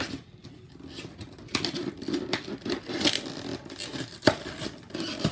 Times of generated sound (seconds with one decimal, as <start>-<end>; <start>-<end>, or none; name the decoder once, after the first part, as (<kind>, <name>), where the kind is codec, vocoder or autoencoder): none

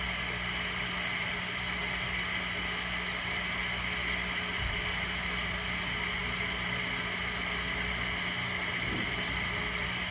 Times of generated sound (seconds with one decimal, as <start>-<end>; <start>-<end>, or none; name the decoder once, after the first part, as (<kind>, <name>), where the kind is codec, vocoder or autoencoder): none

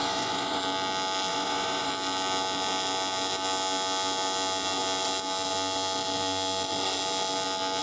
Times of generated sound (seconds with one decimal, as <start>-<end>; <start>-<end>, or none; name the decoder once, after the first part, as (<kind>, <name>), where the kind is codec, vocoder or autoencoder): 0.0-0.6 (vocoder, Vocos); 1.3-1.9

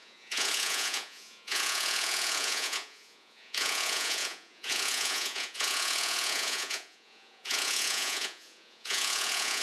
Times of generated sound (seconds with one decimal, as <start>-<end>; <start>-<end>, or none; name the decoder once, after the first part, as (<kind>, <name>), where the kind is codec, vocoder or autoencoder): 0.0-9.6 (vocoder, Vocos)

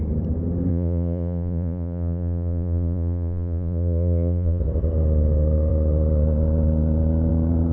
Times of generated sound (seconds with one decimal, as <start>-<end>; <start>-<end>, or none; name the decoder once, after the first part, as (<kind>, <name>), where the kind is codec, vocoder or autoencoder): 0.7-4.6 (vocoder, Vocos)